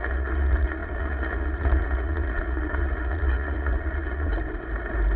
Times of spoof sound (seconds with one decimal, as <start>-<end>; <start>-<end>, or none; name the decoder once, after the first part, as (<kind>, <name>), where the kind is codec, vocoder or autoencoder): 0.0-4.3 (vocoder, Vocos)

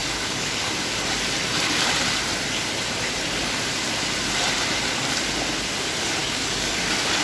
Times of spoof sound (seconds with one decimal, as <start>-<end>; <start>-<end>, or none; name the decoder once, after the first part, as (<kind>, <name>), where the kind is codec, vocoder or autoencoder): 0.0-0.6 (codec, DAC); 6.2-7.2

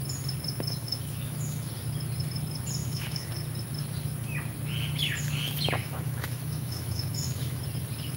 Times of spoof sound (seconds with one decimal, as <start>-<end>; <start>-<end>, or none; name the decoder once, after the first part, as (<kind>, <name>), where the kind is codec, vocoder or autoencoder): 0.8-1.7 (autoencoder, DAC-VAE); 2.8-3.3; 5.8-7.6

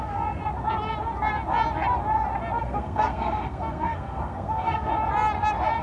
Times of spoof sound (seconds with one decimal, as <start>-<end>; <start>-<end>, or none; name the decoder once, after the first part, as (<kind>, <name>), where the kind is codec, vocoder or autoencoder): 0.0-0.4 (codec, SNAC); 2.6-4.9

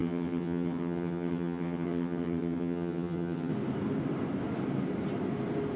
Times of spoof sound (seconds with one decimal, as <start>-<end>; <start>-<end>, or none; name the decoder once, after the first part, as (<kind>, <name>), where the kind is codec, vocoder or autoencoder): 0.0-3.5 (vocoder, HiFi-GAN)

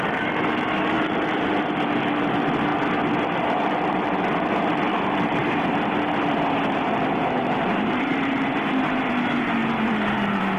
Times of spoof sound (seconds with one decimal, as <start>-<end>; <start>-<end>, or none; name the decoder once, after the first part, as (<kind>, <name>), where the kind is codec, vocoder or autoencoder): 0.0-2.7 (vocoder, BigVGAN v2); 3.6-5.4; 6.8-10.6

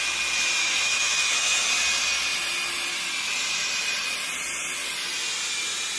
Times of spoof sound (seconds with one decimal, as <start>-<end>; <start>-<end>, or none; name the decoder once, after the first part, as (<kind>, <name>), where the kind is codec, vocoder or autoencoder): 0.6-1.7 (autoencoder, DAC-VAE)

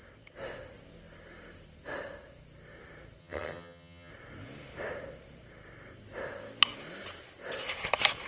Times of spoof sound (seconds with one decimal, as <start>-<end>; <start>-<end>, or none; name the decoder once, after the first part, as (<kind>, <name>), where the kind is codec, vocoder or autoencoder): 3.2-4.1 (vocoder, HiFi-GAN)